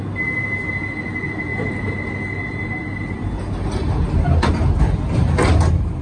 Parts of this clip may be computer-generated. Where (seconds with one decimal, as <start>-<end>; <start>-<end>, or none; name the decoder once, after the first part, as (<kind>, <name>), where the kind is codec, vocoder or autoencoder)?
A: none